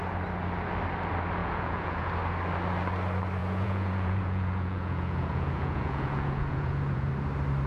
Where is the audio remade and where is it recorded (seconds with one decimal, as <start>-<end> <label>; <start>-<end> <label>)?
0.0-1.4 recorded; 1.4-2.1 remade; 2.1-3.4 recorded; 3.4-7.1 remade; 7.1-7.7 recorded